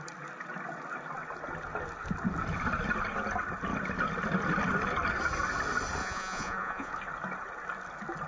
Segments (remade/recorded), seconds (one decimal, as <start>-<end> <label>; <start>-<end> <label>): 0.0-6.0 recorded; 6.0-6.9 remade; 6.9-8.3 recorded